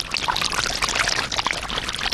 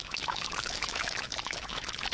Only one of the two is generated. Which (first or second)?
second